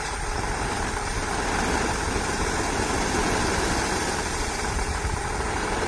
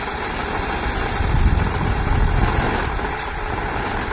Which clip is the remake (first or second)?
first